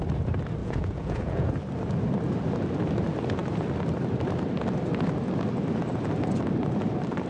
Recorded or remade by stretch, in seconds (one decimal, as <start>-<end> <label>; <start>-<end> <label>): 0.0-0.6 recorded; 0.6-1.5 remade; 1.5-7.3 recorded